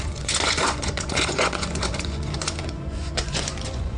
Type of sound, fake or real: fake